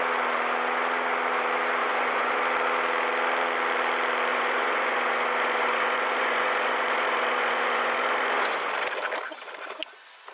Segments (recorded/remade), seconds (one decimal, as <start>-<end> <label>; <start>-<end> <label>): 0.0-1.8 recorded; 1.8-2.4 remade; 2.4-4.3 recorded; 4.3-8.7 remade; 8.7-10.3 recorded